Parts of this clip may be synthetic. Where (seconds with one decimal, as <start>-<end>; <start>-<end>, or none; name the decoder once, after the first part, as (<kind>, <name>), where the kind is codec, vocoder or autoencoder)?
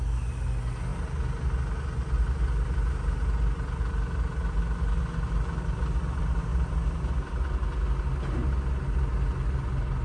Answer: none